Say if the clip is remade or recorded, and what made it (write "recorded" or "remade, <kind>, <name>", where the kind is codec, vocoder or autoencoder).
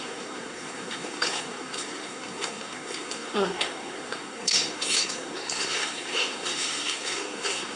remade, codec, SNAC